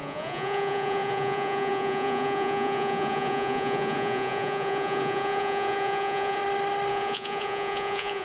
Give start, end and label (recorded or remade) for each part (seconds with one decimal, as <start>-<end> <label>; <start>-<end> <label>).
0.0-6.4 remade; 6.4-6.9 recorded; 6.9-8.2 remade